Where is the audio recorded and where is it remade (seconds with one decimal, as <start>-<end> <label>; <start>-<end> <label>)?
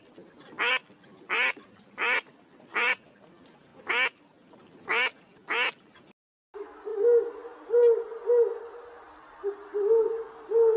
0.0-10.8 recorded